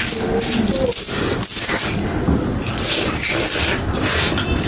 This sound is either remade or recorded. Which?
recorded